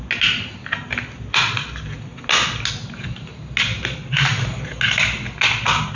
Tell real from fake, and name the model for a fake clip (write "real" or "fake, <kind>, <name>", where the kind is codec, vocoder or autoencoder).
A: real